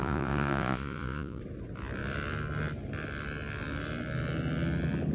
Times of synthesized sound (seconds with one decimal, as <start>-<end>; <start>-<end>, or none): 0.0-1.4